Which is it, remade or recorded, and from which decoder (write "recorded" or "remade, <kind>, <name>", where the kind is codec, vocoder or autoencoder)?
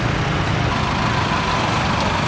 recorded